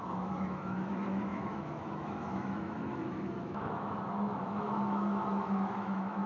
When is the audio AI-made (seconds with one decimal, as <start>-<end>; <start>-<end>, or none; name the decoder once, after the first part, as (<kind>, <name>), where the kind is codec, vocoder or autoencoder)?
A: 0.0-6.3 (autoencoder, DAC-VAE)